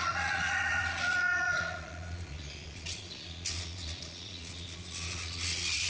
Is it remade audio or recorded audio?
remade